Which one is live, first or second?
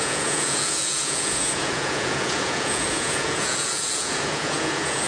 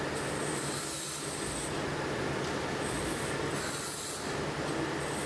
second